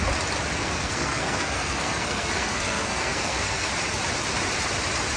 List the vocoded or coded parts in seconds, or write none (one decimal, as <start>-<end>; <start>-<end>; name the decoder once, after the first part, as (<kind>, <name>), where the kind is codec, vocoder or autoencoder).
0.6-3.7 (codec, SNAC)